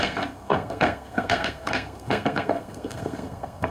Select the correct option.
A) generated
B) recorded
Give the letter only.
A